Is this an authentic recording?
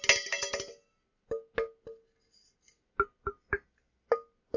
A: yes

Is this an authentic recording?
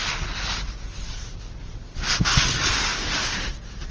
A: yes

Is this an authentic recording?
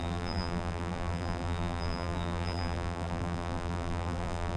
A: no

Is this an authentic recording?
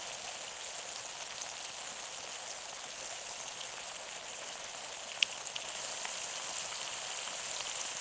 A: yes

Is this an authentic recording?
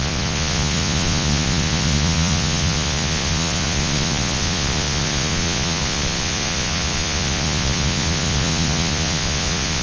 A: no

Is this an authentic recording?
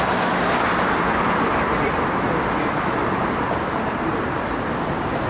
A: yes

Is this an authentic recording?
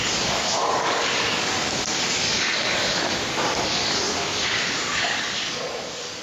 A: no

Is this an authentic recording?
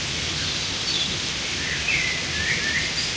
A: yes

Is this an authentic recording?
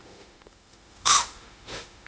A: no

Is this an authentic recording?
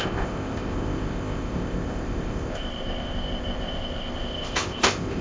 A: no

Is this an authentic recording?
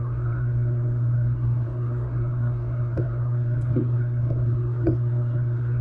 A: no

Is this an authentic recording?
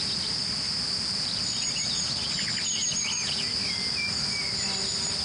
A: yes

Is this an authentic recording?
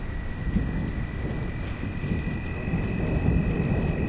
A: yes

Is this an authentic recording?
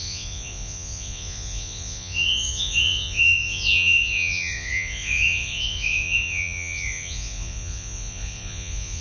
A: no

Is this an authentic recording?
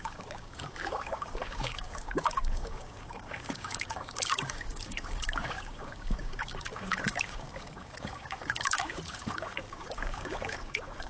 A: no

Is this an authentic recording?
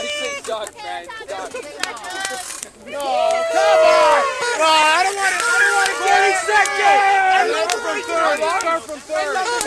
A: yes